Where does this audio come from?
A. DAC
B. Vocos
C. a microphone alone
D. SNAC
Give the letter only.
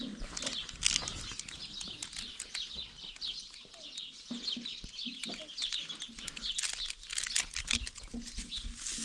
C